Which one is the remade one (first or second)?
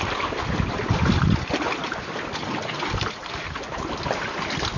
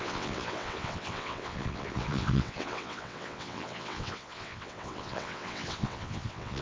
second